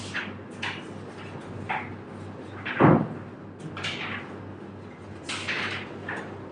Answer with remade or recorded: recorded